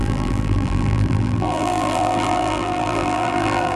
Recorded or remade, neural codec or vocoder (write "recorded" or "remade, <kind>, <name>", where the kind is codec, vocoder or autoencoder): remade, vocoder, BigVGAN v2